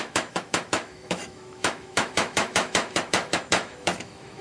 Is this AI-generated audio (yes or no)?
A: yes